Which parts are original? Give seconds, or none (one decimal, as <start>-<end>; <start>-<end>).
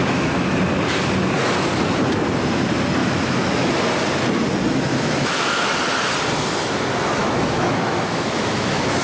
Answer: 0.5-3.0; 3.7-4.9; 5.7-7.2